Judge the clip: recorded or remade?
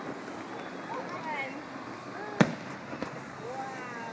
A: recorded